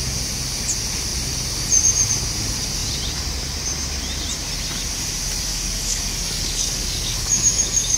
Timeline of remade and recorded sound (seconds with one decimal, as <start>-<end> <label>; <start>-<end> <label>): 0.0-5.5 recorded; 5.5-8.0 remade